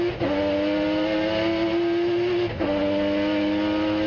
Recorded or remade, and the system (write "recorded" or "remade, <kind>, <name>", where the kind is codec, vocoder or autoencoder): recorded